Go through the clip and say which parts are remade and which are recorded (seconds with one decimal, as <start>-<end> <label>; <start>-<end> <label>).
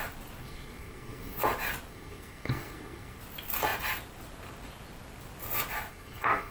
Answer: 0.0-0.4 recorded; 0.4-1.4 remade; 1.4-1.9 recorded; 1.9-3.2 remade; 3.2-5.9 recorded; 5.9-6.5 remade